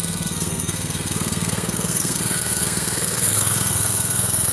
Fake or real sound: fake